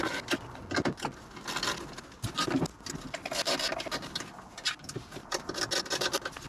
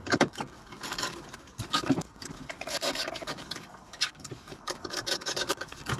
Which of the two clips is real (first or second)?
first